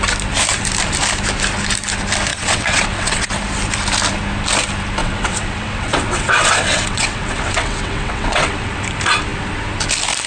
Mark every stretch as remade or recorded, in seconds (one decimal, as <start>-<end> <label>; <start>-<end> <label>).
0.0-2.3 recorded; 2.3-3.3 remade; 3.3-5.0 recorded; 5.0-8.7 remade; 8.7-10.3 recorded